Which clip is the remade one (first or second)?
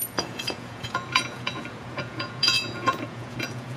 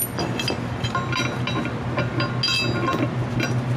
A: first